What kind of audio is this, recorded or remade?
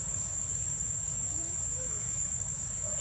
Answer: remade